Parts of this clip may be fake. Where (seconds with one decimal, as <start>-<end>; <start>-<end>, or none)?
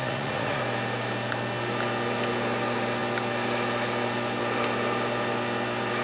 0.0-0.6